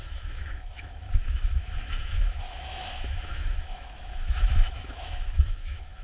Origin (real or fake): fake